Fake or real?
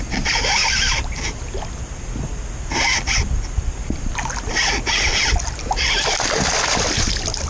fake